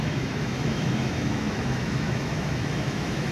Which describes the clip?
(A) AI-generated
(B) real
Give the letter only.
A